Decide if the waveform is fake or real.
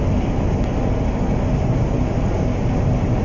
real